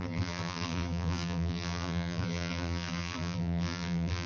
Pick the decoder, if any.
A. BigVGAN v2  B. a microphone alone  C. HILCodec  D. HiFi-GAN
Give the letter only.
A